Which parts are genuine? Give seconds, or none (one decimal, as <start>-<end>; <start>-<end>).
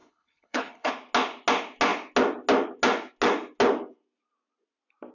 0.9-5.1